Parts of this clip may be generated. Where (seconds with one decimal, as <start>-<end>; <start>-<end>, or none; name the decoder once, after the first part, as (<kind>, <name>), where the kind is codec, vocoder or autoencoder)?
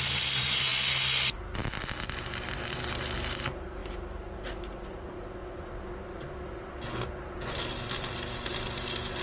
none